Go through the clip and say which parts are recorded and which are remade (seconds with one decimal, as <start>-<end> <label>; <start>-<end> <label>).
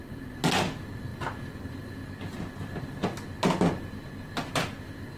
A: 0.0-5.2 recorded